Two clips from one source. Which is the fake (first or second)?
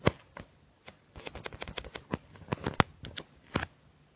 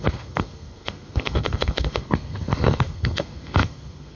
second